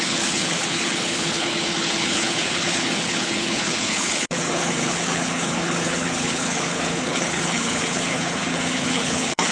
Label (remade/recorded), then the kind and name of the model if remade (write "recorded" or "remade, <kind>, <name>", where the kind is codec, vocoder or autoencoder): remade, codec, HILCodec